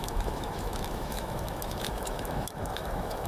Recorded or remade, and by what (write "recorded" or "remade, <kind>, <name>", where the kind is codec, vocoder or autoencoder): remade, autoencoder, DAC-VAE